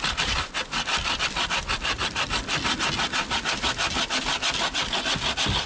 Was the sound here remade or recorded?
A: recorded